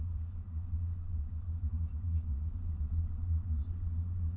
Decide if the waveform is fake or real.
fake